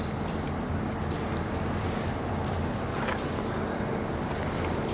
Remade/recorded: recorded